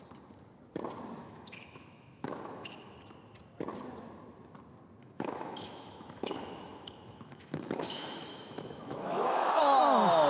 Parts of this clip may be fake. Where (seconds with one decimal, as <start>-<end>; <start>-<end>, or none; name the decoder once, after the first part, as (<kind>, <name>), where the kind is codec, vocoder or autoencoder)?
1.2-3.0 (autoencoder, DAC-VAE); 5.0-9.6